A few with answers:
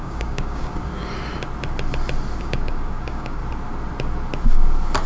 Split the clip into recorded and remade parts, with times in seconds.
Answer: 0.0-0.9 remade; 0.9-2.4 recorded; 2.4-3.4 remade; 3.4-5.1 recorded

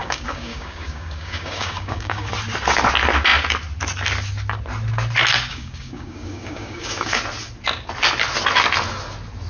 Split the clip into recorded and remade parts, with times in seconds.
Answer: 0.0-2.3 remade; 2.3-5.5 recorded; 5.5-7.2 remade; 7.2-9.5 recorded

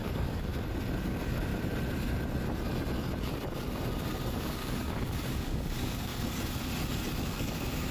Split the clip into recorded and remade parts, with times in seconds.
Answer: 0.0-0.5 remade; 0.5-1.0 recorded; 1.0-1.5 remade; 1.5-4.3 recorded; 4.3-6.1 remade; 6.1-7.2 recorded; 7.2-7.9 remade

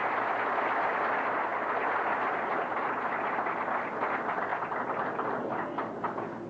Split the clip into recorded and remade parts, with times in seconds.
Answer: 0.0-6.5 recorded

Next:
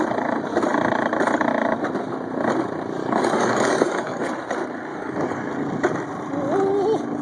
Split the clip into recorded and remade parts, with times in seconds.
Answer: 0.0-3.0 recorded; 3.0-4.3 remade; 4.3-4.9 recorded; 4.9-5.5 remade; 5.5-7.2 recorded

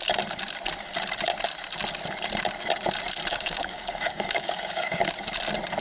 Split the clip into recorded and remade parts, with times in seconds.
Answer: 0.0-3.3 recorded; 3.3-5.0 remade; 5.0-5.8 recorded

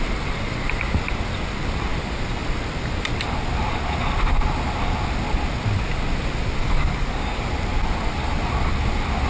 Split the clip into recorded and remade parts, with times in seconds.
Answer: 0.0-6.6 recorded; 6.6-7.4 remade; 7.4-9.3 recorded